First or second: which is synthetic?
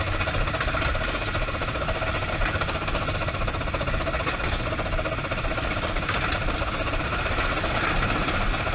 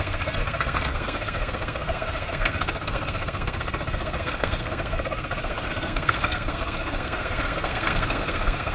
second